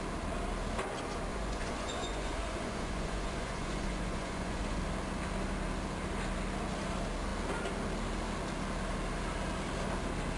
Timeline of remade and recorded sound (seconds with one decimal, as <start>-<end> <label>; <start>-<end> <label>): 0.0-1.3 recorded; 1.3-4.8 remade; 4.8-10.4 recorded